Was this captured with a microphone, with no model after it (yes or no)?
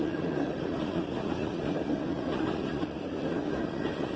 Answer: no